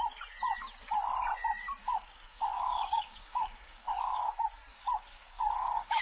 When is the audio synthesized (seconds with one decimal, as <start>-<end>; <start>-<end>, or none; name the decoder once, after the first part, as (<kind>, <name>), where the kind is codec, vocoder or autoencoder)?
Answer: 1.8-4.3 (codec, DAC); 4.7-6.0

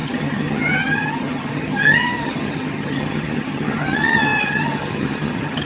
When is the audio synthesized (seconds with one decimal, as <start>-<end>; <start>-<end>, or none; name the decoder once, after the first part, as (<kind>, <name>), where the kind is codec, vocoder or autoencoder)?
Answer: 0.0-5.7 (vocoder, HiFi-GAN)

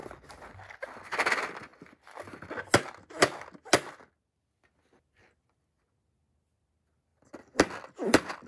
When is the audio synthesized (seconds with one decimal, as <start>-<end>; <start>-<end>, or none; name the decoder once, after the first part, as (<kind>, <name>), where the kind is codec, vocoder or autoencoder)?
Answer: none

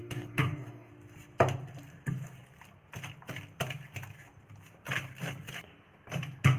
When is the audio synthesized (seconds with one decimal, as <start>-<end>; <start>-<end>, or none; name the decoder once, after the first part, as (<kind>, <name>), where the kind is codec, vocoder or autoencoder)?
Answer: 0.0-0.9 (codec, DAC)

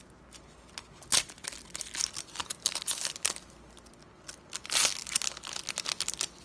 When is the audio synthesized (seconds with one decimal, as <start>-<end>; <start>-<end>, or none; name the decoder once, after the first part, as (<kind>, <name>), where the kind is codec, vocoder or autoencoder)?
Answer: 2.4-3.0 (vocoder, BigVGAN v2)

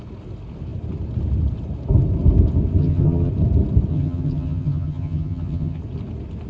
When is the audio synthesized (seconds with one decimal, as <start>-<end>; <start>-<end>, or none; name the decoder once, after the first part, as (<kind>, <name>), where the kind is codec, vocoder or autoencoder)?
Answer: 2.8-3.3 (vocoder, HiFi-GAN); 3.9-5.8

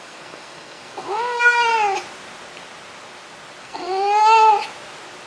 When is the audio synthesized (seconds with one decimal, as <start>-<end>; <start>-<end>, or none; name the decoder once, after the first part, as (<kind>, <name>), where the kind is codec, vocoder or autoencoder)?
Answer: 0.0-1.7 (codec, SNAC); 3.6-4.5

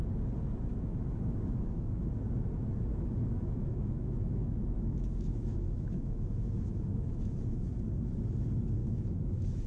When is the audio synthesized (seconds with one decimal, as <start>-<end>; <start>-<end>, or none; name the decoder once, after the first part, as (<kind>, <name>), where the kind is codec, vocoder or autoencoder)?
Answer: 0.7-2.1 (autoencoder, DAC-VAE); 2.9-7.7; 8.8-9.7